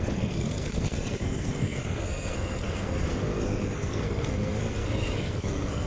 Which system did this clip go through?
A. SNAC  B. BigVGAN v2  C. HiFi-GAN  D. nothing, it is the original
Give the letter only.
A